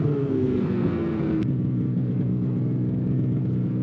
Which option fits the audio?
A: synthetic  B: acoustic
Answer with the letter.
A